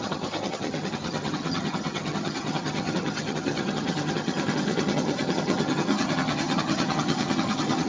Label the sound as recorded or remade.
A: remade